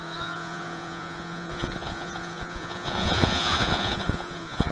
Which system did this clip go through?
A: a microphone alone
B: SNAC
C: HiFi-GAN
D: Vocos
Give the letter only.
D